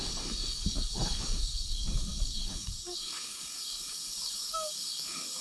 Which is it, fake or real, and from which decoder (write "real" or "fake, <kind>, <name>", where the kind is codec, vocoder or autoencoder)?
fake, codec, DAC